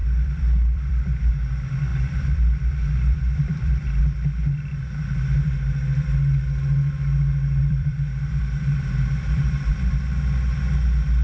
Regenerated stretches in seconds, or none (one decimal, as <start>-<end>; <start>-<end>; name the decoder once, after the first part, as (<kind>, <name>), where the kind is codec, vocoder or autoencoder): 0.0-1.3 (vocoder, BigVGAN v2); 1.9-4.0; 7.6-9.7